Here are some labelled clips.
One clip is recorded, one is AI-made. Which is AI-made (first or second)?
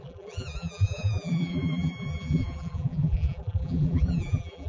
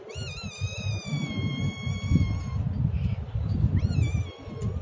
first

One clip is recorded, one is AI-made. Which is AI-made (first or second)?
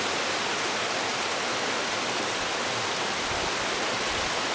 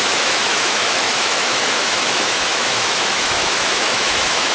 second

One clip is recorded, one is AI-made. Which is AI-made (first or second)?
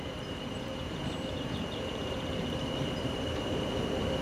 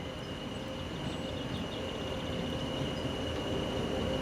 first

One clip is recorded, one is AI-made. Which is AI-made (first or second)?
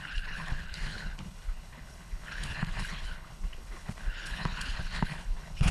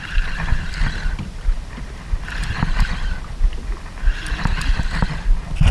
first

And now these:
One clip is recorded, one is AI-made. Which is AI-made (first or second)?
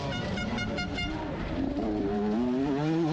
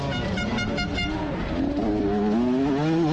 first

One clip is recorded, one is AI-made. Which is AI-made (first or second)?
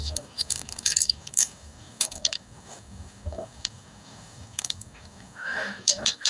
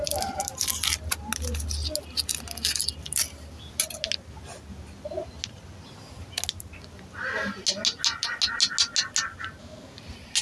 first